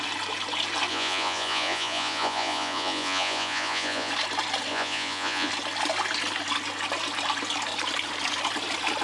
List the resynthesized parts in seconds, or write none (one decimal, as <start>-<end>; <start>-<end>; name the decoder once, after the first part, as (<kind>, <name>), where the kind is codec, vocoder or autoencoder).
0.9-4.1 (vocoder, Vocos); 4.7-5.5